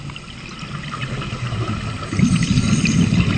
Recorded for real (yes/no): yes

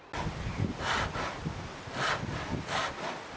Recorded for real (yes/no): yes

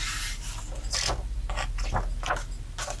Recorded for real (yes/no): yes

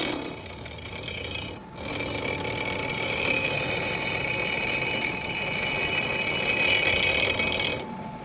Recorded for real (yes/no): yes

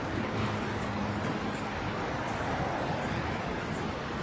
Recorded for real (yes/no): no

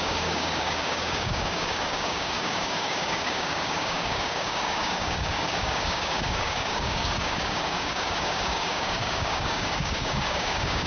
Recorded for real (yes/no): no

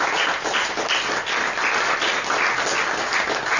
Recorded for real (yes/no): yes